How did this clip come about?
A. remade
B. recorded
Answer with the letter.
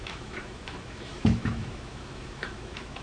A